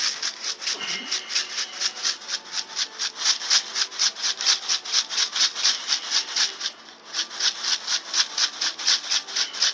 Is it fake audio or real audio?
real